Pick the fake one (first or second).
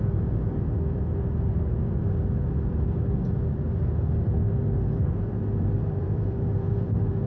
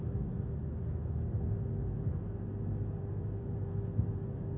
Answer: first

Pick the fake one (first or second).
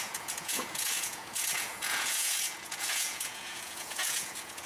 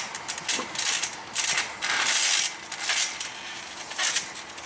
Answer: first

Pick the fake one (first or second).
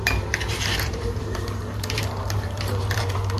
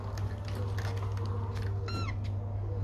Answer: first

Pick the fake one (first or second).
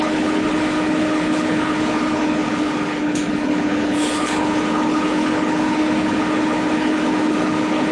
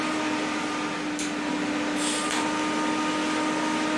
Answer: first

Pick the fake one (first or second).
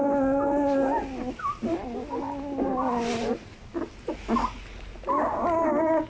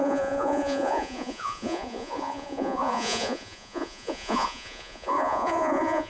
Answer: second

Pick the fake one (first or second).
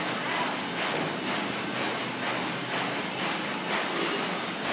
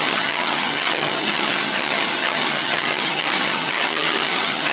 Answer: second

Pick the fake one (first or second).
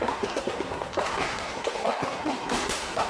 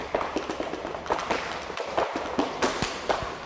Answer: first